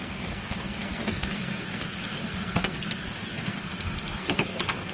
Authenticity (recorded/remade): remade